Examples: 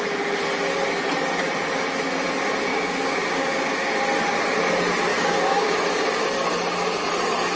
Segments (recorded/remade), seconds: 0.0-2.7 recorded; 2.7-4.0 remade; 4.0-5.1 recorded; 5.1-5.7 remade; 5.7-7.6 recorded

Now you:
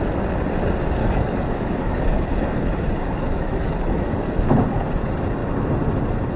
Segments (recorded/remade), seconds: 0.0-1.0 recorded; 1.0-4.5 remade; 4.5-6.4 recorded